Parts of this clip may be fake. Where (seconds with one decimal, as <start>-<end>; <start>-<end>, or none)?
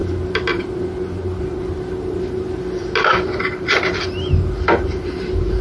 3.4-5.6